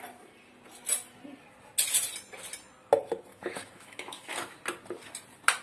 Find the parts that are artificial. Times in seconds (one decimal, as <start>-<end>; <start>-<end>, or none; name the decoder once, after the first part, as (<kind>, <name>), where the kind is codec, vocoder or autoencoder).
3.3-4.6 (autoencoder, DAC-VAE)